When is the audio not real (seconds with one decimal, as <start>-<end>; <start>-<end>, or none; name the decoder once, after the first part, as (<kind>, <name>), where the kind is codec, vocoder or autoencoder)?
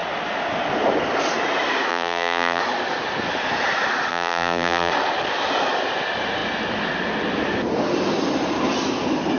1.9-2.6 (vocoder, BigVGAN v2); 4.1-4.9